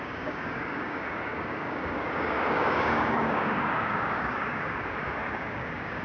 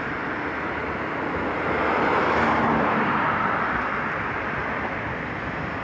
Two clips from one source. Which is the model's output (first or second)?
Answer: first